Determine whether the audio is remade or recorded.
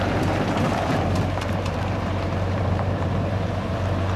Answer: remade